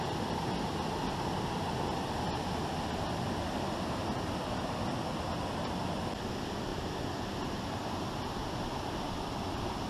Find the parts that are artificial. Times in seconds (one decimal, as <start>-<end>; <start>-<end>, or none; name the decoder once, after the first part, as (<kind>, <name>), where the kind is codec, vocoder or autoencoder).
none